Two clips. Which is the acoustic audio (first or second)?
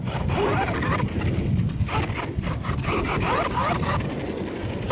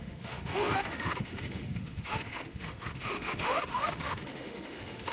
first